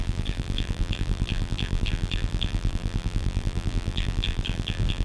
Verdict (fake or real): fake